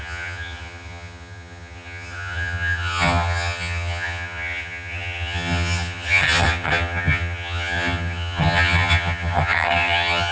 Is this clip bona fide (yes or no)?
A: no